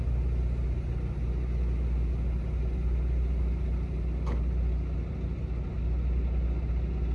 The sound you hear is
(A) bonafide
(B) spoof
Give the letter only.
A